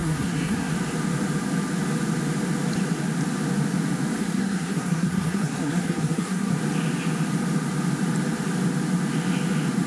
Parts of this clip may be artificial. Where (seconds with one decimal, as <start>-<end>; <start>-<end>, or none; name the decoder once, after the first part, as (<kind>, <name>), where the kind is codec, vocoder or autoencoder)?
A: 0.0-0.7 (codec, SNAC); 4.2-6.6